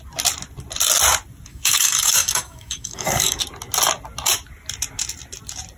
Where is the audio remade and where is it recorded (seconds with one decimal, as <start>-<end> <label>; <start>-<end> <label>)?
0.0-1.5 recorded; 1.5-3.4 remade; 3.4-5.8 recorded